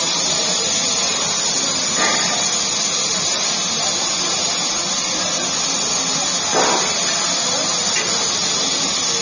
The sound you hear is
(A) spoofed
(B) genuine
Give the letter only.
B